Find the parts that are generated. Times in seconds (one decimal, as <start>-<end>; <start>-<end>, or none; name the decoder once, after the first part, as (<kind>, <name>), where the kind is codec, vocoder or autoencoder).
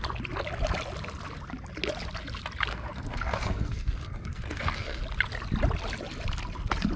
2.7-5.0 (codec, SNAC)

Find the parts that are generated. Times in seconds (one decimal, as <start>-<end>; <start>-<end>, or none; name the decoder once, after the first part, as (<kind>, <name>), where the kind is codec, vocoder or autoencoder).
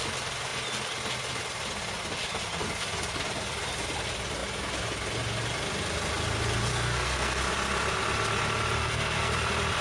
6.7-7.4 (codec, SNAC); 8.8-9.3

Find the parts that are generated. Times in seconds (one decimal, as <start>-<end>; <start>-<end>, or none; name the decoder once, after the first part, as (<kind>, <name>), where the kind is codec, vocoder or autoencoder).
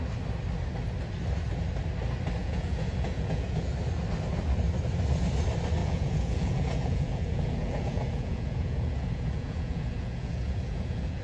2.4-3.7 (vocoder, Vocos); 5.8-11.2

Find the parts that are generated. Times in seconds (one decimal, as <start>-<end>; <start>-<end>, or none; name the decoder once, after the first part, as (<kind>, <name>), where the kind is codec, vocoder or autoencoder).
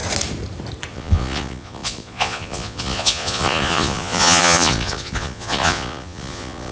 0.9-6.7 (vocoder, Vocos)